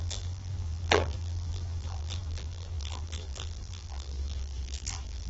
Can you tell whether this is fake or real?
fake